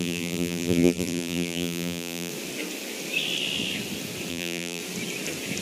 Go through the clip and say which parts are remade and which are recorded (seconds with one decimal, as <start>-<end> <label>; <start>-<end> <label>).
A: 0.0-2.3 remade; 2.3-4.3 recorded; 4.3-4.8 remade; 4.8-5.6 recorded